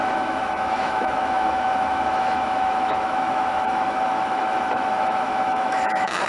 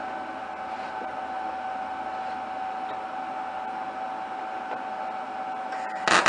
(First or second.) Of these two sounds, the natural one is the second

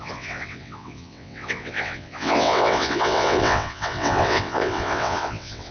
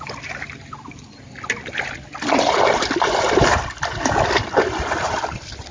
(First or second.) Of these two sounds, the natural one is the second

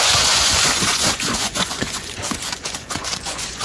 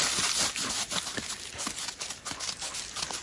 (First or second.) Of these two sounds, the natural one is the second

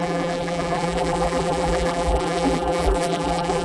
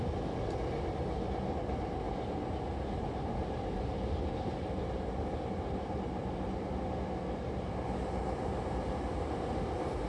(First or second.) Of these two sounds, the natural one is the second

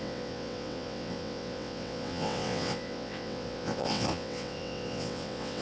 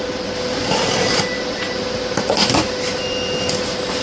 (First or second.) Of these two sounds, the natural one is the second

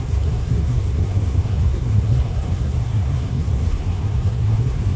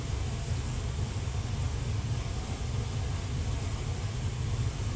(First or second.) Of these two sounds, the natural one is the second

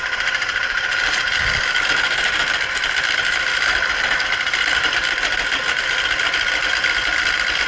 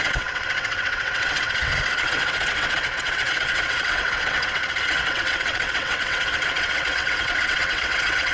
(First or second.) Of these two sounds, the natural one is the first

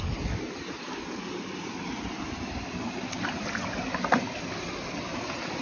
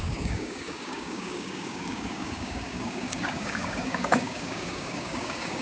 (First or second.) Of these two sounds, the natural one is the first